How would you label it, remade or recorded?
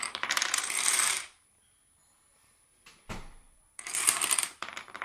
remade